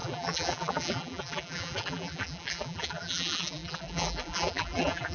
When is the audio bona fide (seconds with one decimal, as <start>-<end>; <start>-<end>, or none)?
none